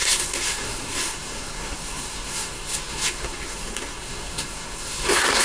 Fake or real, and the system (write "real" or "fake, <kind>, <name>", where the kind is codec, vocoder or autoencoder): fake, codec, SNAC